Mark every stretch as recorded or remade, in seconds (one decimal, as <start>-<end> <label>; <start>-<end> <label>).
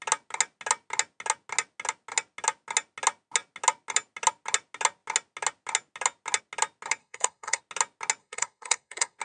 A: 0.0-7.0 recorded; 7.0-7.6 remade; 7.6-8.2 recorded; 8.2-9.2 remade